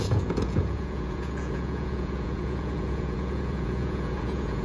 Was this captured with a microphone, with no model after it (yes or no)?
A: no